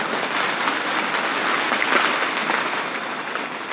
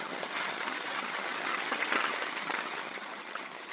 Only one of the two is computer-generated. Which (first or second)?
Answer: second